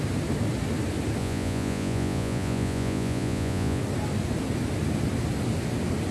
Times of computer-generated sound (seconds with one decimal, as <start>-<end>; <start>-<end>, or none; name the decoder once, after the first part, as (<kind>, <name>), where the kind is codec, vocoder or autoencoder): 1.2-3.8 (vocoder, Vocos)